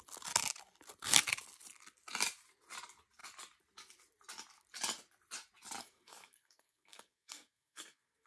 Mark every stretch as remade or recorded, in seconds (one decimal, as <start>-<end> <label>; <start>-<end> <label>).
0.0-5.8 recorded; 5.8-8.3 remade